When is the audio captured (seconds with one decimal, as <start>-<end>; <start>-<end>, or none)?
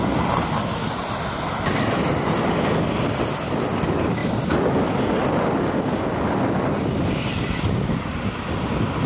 0.0-9.1